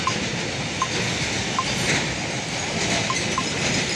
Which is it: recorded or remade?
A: recorded